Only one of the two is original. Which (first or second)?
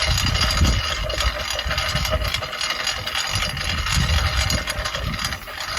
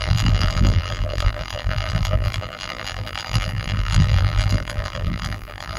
first